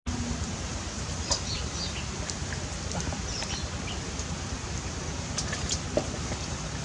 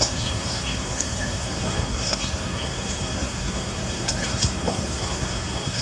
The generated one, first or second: second